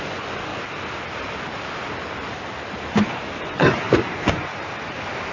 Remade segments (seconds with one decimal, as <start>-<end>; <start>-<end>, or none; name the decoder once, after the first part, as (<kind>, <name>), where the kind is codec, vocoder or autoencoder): 0.0-0.5 (vocoder, Vocos); 3.4-4.5